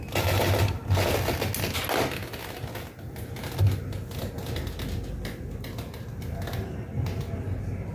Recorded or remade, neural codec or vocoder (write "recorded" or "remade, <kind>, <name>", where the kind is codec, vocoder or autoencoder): recorded